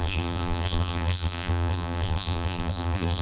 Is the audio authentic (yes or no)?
no